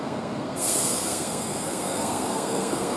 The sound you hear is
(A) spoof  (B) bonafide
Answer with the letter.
A